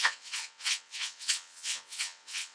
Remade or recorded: remade